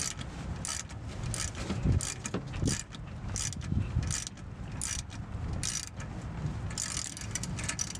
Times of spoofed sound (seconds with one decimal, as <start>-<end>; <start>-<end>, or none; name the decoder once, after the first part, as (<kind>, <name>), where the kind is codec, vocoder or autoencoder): none